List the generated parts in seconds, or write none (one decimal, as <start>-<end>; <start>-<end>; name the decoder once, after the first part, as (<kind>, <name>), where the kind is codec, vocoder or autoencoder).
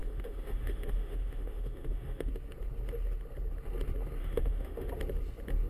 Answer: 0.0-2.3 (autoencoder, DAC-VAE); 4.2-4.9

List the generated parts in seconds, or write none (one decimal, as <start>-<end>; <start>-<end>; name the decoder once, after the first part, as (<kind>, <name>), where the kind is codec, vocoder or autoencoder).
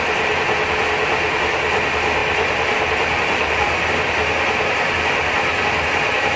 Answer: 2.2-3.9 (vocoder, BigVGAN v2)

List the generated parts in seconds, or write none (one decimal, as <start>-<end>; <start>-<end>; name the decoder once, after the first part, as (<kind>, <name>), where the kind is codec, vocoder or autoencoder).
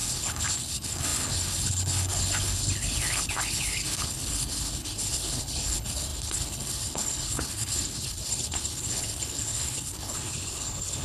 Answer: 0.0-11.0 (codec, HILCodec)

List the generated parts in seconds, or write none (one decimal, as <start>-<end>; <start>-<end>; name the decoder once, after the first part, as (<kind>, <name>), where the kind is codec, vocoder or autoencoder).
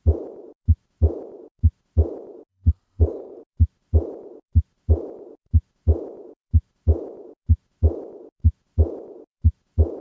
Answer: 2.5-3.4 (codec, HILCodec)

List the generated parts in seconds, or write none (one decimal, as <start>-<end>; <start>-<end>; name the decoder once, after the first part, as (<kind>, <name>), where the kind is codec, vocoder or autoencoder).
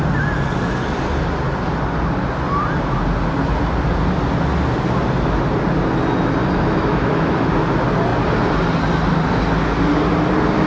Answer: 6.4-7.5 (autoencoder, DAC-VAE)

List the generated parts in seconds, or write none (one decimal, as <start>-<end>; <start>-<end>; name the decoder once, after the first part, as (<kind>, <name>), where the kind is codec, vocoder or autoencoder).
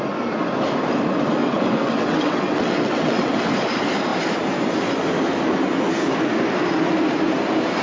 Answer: 1.4-3.5 (vocoder, WaveNeXt)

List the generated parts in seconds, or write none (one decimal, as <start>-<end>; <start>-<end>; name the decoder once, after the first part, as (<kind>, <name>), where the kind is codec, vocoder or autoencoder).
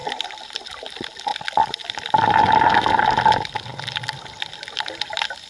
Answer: 0.0-0.7 (vocoder, BigVGAN v2); 1.3-1.9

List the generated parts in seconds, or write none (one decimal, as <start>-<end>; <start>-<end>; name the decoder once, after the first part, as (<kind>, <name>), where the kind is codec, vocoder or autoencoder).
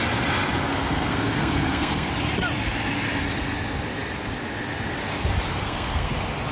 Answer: 0.7-2.1 (codec, SNAC); 5.5-6.1